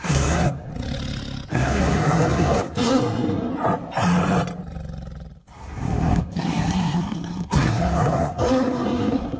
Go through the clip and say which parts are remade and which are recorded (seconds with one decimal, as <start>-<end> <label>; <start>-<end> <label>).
0.0-0.7 remade; 0.7-1.5 recorded; 1.5-3.5 remade; 3.5-5.4 recorded; 5.4-9.4 remade